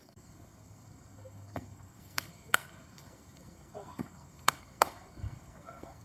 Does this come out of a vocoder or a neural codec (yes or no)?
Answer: yes